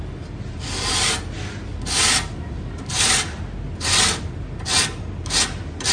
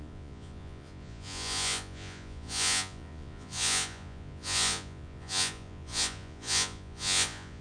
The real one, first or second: first